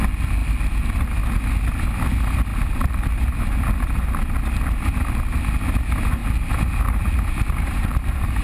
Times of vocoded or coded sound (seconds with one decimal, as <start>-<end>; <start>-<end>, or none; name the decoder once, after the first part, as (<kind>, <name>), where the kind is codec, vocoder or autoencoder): 6.2-8.4 (vocoder, BigVGAN v2)